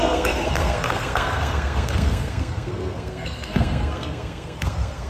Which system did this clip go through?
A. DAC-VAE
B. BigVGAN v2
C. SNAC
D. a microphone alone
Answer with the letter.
C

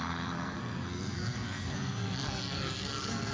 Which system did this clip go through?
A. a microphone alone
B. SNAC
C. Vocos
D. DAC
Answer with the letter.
B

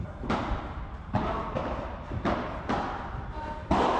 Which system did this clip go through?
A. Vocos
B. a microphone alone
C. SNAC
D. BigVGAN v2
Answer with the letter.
B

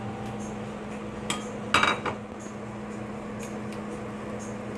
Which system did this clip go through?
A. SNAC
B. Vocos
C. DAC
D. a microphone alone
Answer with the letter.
D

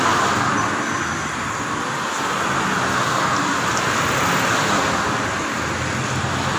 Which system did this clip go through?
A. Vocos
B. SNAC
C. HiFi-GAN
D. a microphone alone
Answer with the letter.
D